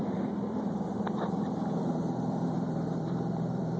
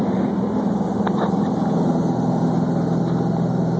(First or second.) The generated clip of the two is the first